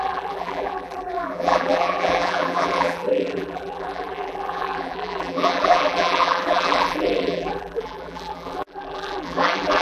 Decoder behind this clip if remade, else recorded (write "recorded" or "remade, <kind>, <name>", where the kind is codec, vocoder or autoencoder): remade, vocoder, BigVGAN v2